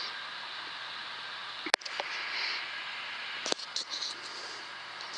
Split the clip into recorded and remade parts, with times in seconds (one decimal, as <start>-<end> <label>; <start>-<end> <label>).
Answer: 0.0-5.2 recorded